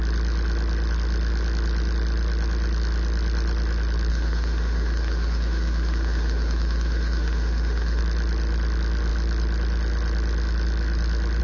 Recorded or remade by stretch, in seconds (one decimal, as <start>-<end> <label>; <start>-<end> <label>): 0.0-4.1 recorded; 4.1-8.0 remade; 8.0-11.4 recorded